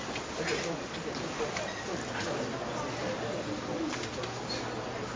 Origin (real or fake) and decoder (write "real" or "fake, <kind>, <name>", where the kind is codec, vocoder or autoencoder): real